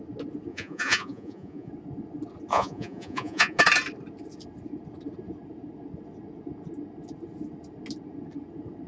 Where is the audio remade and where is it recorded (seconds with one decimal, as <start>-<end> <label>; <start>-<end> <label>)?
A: 0.0-0.5 recorded; 0.5-1.7 remade; 1.7-2.5 recorded; 2.5-3.6 remade; 3.6-8.9 recorded